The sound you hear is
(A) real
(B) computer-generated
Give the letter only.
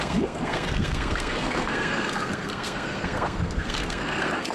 B